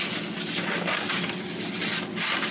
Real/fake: real